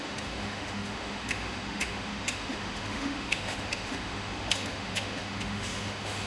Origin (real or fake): fake